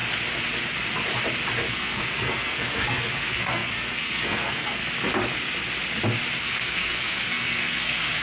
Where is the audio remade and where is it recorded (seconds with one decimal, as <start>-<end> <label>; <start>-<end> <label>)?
0.0-1.7 recorded; 1.7-4.8 remade; 4.8-6.4 recorded; 6.4-8.2 remade